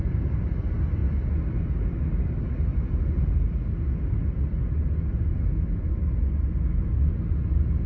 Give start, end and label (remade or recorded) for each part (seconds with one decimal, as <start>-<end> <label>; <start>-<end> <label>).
0.0-7.9 recorded